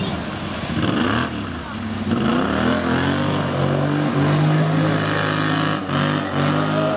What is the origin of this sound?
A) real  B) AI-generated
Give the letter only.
A